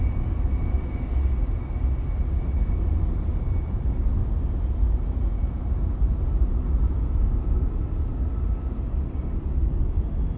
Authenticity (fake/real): real